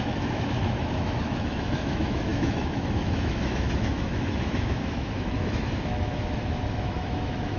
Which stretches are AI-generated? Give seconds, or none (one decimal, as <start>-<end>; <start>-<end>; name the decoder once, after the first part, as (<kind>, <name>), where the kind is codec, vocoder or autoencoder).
0.0-7.6 (autoencoder, DAC-VAE)